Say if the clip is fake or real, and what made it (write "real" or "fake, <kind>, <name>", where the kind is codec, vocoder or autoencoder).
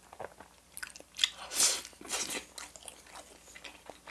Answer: real